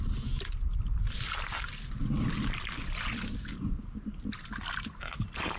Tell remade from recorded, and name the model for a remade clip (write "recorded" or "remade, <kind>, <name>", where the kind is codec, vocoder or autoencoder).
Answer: recorded